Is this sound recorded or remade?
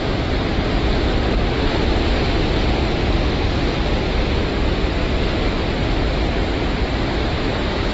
recorded